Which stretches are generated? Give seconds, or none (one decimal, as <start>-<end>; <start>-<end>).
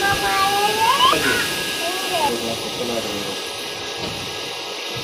none